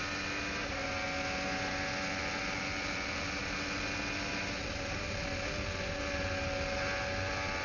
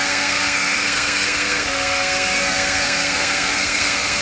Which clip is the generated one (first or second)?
second